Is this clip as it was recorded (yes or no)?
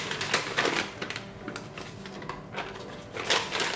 yes